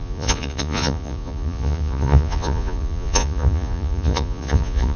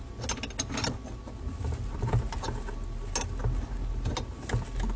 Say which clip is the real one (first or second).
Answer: second